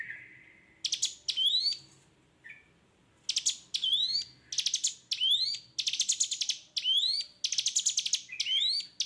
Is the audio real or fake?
real